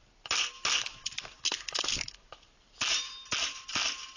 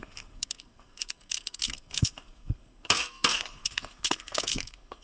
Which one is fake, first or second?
second